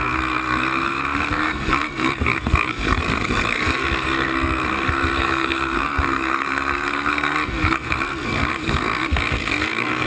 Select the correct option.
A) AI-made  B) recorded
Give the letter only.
A